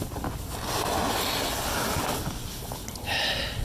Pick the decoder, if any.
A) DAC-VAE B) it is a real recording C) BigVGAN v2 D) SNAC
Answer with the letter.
B